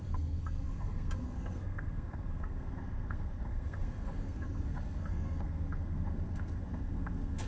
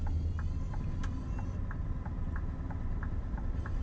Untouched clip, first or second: second